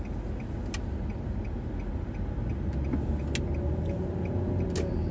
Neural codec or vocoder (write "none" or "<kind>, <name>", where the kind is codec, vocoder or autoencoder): none